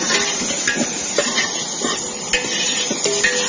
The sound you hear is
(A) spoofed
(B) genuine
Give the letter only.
B